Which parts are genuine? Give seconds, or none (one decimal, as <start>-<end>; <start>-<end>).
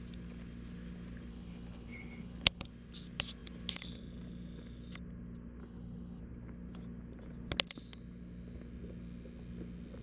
0.0-1.3; 2.7-5.6; 6.2-10.0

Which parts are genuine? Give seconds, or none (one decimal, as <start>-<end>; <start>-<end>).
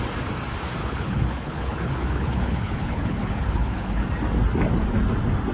0.0-0.8; 4.0-5.5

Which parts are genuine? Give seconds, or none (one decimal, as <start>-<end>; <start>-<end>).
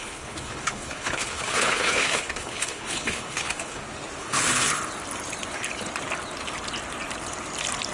3.8-4.2; 4.8-7.9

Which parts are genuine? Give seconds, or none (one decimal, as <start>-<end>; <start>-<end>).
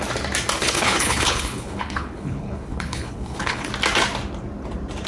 0.0-0.6; 3.7-5.1